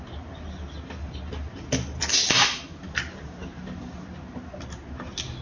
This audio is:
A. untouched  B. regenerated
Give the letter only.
A